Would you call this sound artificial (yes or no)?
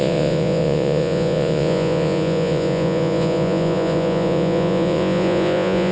yes